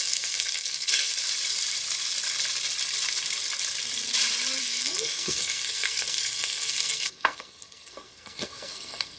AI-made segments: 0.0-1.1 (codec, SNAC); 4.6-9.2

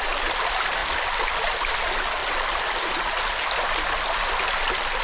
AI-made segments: none

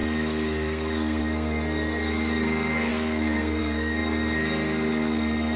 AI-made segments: 0.0-5.6 (codec, SNAC)

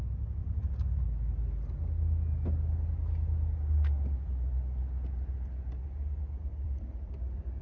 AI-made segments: 0.4-1.0 (vocoder, BigVGAN v2); 6.5-7.6